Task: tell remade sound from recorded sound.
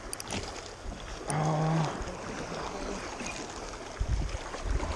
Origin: recorded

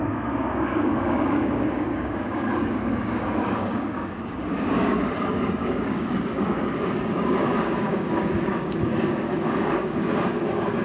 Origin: remade